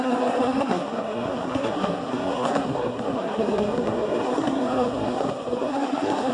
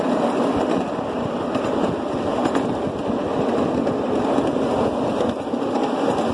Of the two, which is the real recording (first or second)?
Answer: second